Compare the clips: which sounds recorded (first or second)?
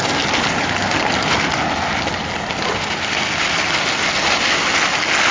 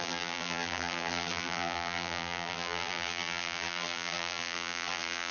first